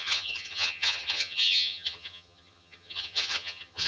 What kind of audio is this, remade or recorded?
remade